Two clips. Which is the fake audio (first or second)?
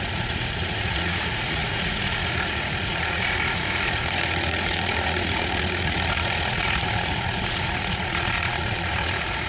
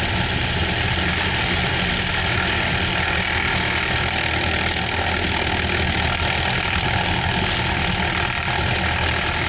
first